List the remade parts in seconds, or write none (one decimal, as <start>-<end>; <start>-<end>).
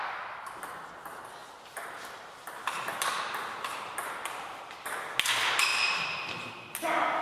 1.4-4.9; 5.7-6.5